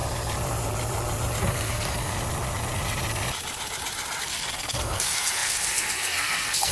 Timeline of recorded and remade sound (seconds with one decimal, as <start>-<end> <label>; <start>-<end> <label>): 0.0-1.4 recorded; 1.4-2.1 remade; 2.1-4.2 recorded; 4.2-6.7 remade